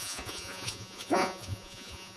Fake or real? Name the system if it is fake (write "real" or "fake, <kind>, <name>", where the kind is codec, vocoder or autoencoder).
fake, vocoder, Vocos